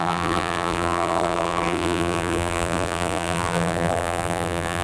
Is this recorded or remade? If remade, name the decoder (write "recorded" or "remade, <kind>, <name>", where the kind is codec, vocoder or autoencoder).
remade, vocoder, BigVGAN v2